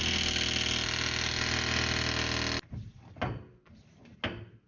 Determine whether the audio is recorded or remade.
recorded